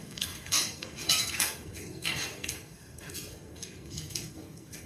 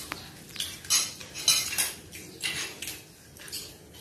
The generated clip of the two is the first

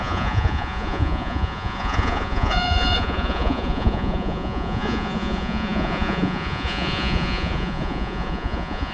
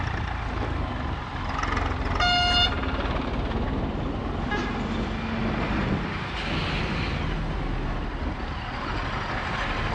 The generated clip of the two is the first